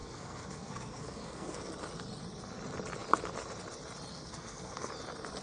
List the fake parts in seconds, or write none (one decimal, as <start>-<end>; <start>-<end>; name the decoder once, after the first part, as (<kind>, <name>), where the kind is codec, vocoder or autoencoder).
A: 0.0-1.7 (codec, SNAC); 4.1-4.9

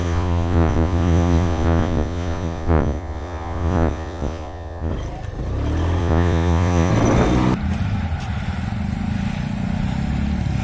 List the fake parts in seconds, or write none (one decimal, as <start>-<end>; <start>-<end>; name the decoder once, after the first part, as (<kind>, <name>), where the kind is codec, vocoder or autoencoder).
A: 0.0-4.9 (vocoder, Vocos); 6.0-6.9

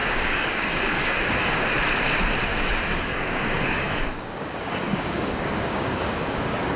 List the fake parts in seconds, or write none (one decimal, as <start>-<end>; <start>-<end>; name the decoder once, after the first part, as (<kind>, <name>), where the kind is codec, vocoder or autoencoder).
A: 0.0-1.7 (codec, DAC); 2.5-6.8

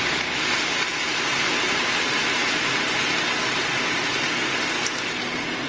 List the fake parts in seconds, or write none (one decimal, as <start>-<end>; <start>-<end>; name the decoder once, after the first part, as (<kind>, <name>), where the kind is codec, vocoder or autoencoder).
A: none

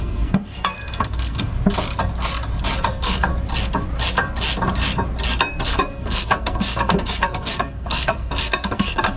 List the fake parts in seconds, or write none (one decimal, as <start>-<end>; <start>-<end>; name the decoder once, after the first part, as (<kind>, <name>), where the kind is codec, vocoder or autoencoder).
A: 0.0-1.5 (codec, SNAC); 2.9-3.3; 5.7-9.2

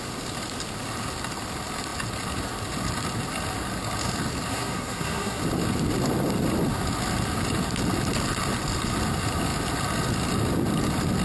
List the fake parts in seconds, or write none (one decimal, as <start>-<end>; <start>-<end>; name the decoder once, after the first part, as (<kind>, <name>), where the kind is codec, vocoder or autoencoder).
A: 4.5-5.4 (codec, SNAC)